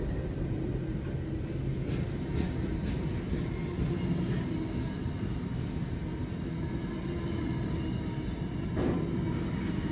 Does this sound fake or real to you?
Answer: real